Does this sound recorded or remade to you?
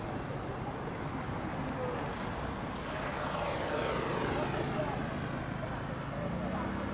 recorded